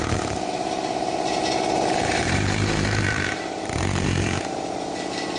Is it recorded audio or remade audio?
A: remade